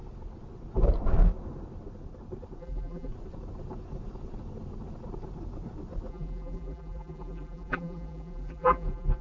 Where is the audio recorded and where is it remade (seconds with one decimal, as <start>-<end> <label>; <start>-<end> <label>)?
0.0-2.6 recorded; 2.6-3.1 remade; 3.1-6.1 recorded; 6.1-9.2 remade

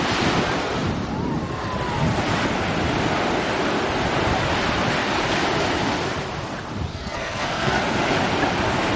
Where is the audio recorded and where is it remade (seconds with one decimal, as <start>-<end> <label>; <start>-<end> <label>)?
0.0-6.9 recorded; 6.9-7.8 remade; 7.8-9.0 recorded

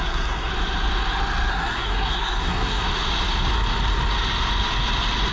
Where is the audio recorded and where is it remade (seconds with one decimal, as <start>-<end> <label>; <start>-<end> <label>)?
0.0-0.5 remade; 0.5-1.5 recorded; 1.5-2.9 remade; 2.9-5.3 recorded

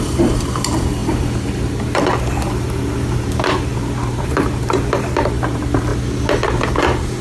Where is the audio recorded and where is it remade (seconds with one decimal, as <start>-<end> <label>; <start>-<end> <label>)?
0.0-5.9 remade; 5.9-6.8 recorded; 6.8-7.2 remade